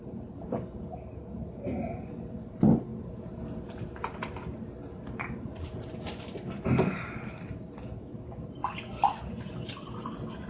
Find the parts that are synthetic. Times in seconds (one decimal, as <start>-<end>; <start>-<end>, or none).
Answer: 0.0-2.9; 3.6-8.6; 9.7-10.5